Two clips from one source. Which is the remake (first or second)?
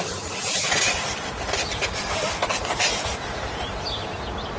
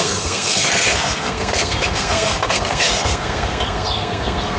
second